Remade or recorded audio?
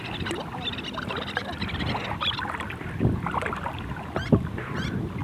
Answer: recorded